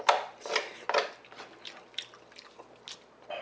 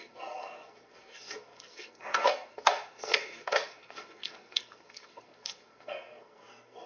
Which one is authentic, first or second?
first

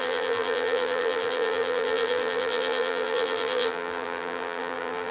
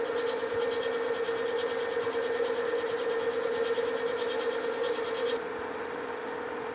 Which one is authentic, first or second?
second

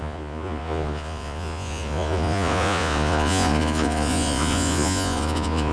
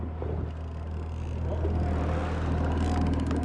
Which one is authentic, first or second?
second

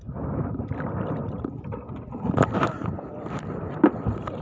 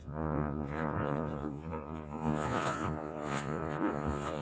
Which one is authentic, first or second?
first